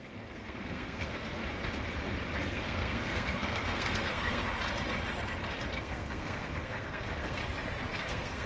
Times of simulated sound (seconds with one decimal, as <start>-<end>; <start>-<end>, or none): 0.0-1.4; 2.4-4.4; 5.8-7.4; 7.9-8.5